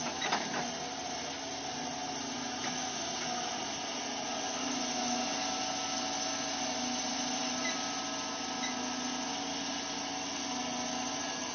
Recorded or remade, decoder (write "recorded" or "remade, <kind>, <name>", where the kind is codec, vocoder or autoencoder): recorded